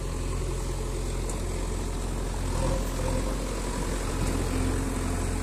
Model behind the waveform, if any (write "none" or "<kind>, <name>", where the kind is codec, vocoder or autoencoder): none